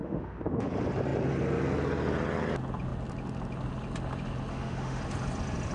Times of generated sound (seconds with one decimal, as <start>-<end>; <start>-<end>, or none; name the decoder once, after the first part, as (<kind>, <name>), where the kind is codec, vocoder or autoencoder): 0.0-0.7 (autoencoder, DAC-VAE); 4.5-5.0